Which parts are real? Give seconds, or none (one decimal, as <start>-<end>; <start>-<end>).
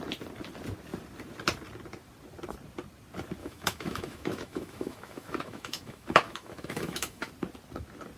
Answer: 0.0-3.4; 7.3-8.2